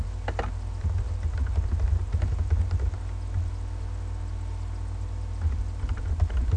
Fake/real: real